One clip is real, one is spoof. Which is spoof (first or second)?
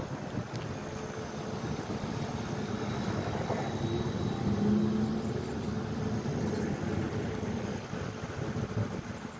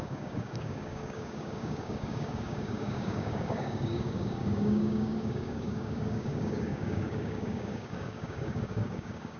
second